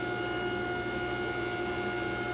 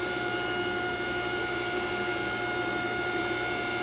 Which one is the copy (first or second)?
second